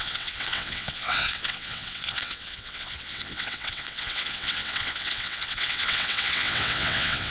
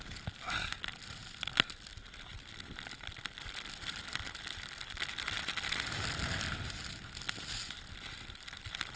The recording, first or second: second